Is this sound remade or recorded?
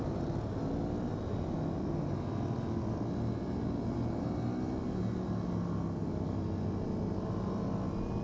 recorded